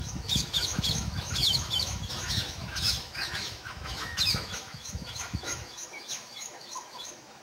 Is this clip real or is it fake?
fake